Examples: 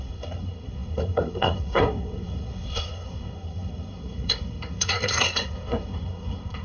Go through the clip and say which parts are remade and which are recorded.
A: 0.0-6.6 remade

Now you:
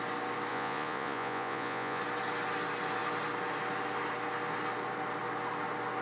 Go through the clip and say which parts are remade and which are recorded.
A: 0.0-0.5 recorded; 0.5-2.0 remade; 2.0-6.0 recorded

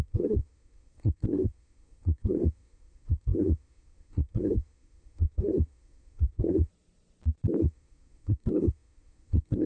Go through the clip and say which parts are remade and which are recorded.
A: 0.0-6.7 remade; 6.7-7.6 recorded; 7.6-9.7 remade

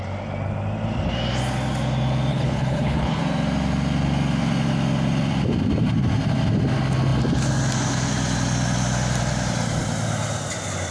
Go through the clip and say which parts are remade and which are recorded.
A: 0.0-2.3 recorded; 2.3-3.2 remade; 3.2-10.9 recorded